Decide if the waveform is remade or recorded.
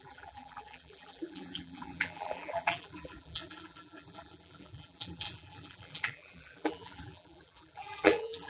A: remade